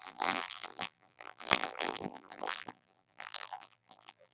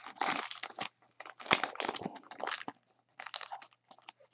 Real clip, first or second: second